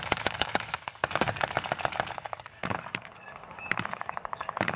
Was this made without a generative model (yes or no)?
no